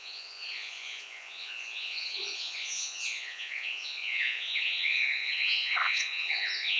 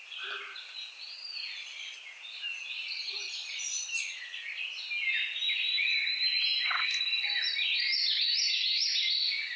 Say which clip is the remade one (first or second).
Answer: first